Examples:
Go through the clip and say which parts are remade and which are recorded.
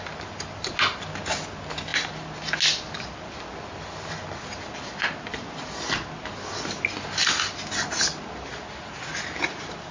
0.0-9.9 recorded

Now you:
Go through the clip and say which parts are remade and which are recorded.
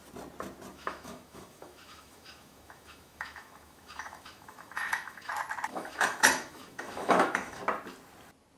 0.0-0.7 recorded; 0.7-5.3 remade; 5.3-5.7 recorded; 5.7-7.6 remade; 7.6-8.6 recorded